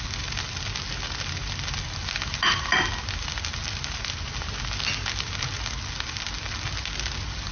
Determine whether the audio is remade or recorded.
recorded